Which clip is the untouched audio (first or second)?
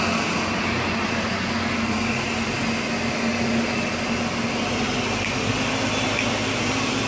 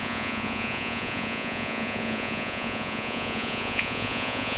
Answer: first